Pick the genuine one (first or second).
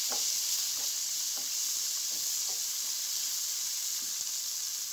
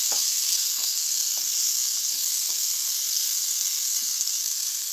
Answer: first